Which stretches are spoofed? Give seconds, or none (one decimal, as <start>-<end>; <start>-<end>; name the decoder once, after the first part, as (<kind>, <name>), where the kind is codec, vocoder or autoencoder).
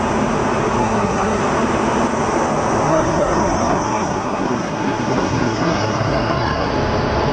0.8-1.4 (codec, SNAC); 2.9-6.7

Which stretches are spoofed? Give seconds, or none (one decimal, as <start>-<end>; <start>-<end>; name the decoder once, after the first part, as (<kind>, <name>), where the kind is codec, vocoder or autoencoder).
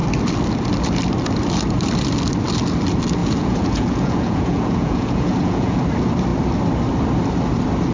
3.2-5.8 (vocoder, Vocos)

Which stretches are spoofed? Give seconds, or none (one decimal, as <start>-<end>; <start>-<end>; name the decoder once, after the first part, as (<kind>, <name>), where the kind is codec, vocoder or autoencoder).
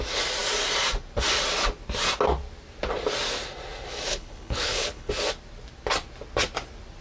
4.1-5.1 (codec, HILCodec)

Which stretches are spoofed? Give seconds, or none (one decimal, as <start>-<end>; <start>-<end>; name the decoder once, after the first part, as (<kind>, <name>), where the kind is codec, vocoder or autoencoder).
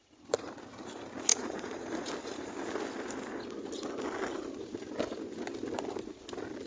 1.3-2.1 (vocoder, Vocos)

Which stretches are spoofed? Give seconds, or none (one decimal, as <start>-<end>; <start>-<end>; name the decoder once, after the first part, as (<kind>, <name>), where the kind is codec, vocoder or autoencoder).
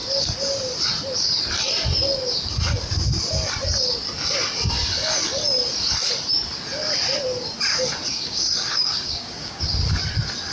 8.1-9.6 (codec, DAC)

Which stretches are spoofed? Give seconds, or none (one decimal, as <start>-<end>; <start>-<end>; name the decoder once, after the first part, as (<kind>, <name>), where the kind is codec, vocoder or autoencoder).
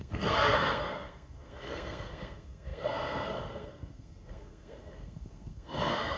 0.0-6.2 (codec, SNAC)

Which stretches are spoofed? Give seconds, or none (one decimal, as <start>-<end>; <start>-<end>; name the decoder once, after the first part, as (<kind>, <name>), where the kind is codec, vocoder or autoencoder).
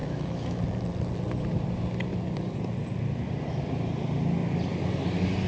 0.0-0.6 (autoencoder, DAC-VAE)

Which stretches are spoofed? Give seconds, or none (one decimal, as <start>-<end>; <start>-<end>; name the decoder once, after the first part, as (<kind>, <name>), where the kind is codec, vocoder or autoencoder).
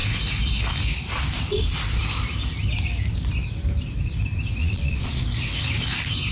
4.6-5.2 (vocoder, Vocos)